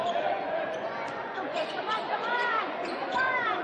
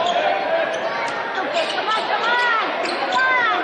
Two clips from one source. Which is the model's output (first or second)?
first